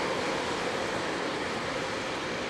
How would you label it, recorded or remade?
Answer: remade